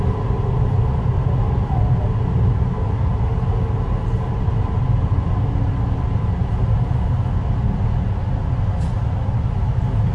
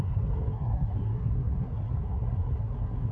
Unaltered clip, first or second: first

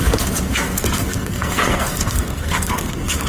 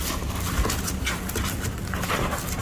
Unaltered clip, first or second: second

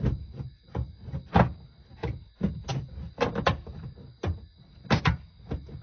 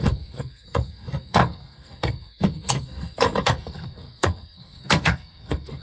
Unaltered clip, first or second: first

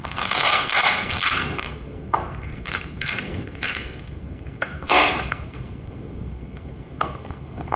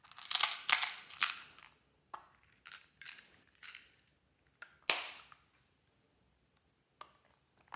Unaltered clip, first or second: second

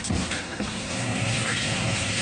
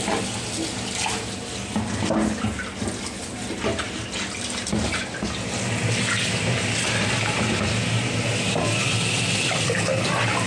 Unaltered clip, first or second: second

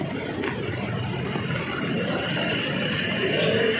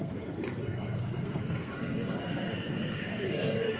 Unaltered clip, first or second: first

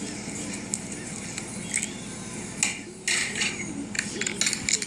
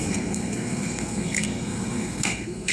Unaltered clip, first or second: first